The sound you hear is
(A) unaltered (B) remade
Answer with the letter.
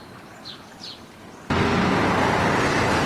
A